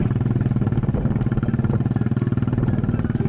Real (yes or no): yes